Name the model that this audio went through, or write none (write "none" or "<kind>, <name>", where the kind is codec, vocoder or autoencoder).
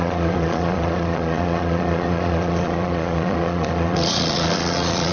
vocoder, Vocos